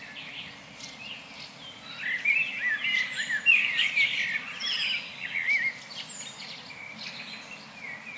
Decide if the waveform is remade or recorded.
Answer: recorded